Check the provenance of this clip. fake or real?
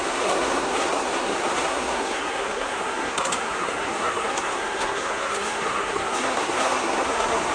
fake